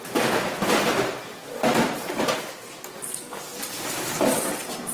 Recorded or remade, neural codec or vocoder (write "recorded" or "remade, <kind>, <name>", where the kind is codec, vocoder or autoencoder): recorded